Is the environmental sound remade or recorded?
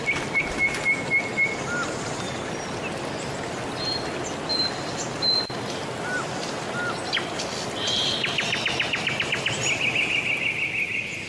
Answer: recorded